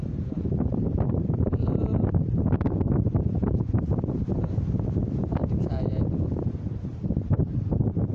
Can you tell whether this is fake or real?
fake